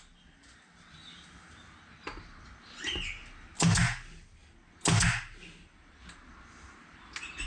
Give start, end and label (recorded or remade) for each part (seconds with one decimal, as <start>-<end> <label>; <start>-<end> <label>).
0.0-7.5 recorded